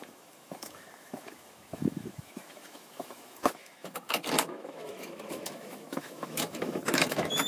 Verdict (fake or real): fake